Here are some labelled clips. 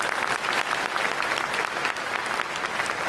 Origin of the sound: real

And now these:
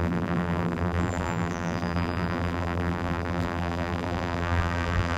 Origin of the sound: fake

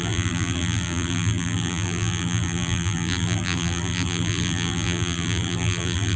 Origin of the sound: fake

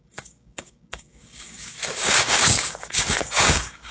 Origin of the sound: fake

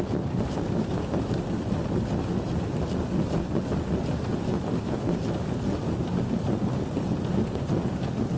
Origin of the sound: real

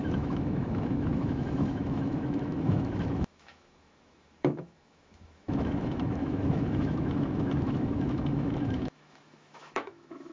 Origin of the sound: fake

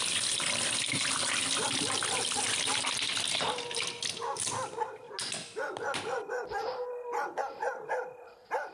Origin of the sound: real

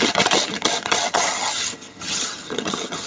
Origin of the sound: fake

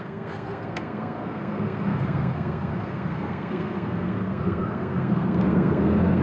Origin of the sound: fake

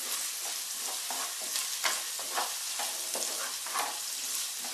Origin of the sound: real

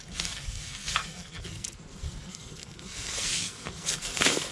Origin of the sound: fake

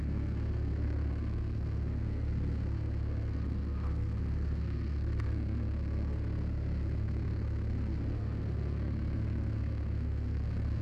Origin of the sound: fake